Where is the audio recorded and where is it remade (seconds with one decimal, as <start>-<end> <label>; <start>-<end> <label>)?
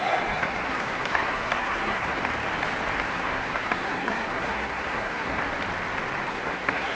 0.0-2.2 remade; 2.2-3.1 recorded; 3.1-5.4 remade; 5.4-6.3 recorded; 6.3-6.9 remade